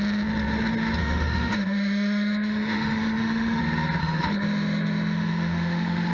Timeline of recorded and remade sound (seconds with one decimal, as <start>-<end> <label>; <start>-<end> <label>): 0.0-1.0 recorded; 1.0-3.6 remade; 3.6-4.0 recorded; 4.0-6.1 remade